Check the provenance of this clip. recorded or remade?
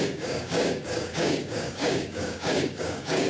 remade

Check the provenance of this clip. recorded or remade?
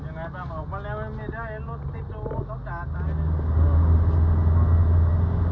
recorded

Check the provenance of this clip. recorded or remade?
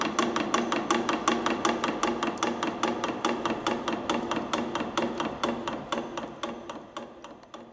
recorded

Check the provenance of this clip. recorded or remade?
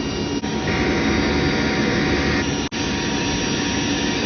recorded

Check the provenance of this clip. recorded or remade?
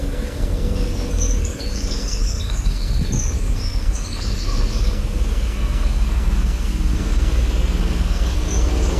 remade